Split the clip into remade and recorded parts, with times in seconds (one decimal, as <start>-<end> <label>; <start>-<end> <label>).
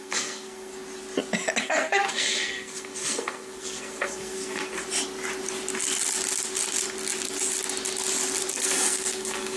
0.0-0.7 remade; 0.7-1.6 recorded; 1.6-4.8 remade; 4.8-8.5 recorded; 8.5-9.6 remade